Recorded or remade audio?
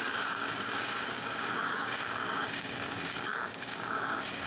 remade